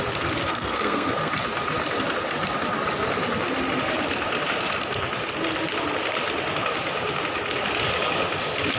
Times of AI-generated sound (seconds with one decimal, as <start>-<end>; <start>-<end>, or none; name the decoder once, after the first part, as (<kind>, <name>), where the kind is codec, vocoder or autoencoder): 0.5-1.3 (codec, SNAC)